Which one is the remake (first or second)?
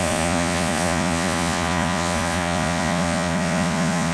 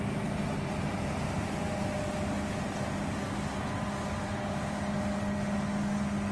first